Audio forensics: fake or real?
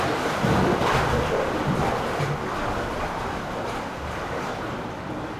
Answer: real